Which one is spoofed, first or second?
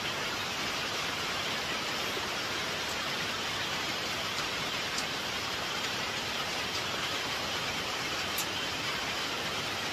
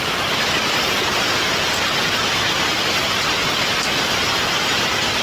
first